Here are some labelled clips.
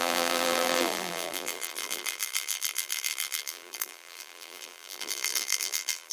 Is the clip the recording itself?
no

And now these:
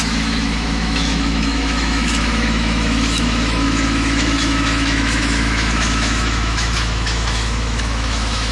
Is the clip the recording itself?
no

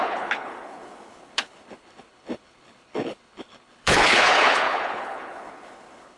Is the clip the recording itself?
no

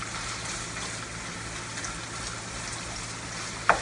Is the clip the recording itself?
yes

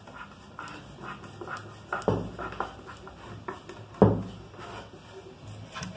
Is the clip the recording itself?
yes